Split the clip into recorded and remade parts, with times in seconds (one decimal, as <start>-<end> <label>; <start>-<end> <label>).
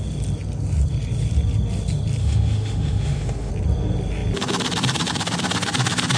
0.0-2.2 recorded; 2.2-3.5 remade; 3.5-6.2 recorded